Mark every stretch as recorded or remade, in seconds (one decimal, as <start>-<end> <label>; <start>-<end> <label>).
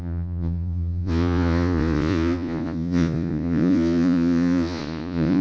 0.0-5.4 remade